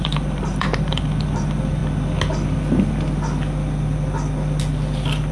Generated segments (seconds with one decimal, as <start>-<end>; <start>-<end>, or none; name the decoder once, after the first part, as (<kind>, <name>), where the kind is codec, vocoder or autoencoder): 0.0-1.8 (vocoder, BigVGAN v2)